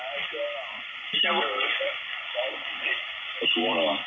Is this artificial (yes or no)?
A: no